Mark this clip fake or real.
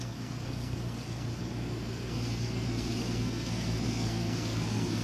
fake